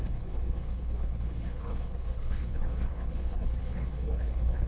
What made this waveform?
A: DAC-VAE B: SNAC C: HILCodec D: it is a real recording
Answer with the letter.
C